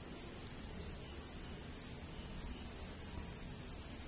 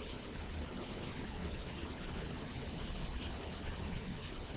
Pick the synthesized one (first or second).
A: second